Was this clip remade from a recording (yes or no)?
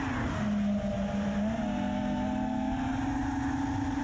no